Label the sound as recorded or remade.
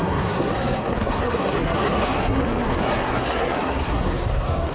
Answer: remade